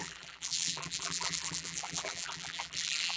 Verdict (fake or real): fake